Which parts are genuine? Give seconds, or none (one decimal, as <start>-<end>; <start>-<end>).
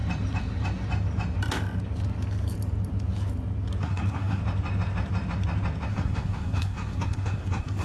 0.0-3.8; 4.4-5.9